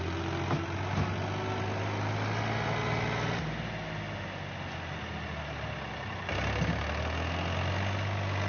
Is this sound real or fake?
real